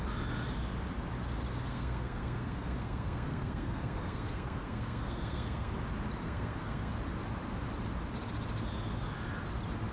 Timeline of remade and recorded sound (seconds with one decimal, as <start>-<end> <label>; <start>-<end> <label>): 0.0-1.7 recorded; 1.7-5.7 remade; 5.7-6.2 recorded; 6.2-6.9 remade; 6.9-9.9 recorded